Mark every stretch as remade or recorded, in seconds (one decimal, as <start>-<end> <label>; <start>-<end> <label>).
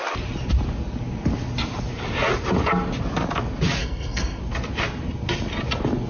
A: 0.0-3.8 recorded; 3.8-4.4 remade; 4.4-6.1 recorded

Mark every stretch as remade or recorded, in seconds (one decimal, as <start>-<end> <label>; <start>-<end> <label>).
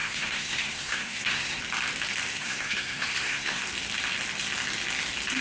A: 0.0-1.6 remade; 1.6-2.3 recorded; 2.3-3.6 remade; 3.6-5.4 recorded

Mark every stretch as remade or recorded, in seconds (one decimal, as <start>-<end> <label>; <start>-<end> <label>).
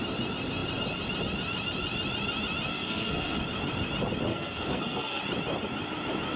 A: 0.0-2.7 recorded; 2.7-3.4 remade; 3.4-4.3 recorded; 4.3-5.2 remade; 5.2-6.4 recorded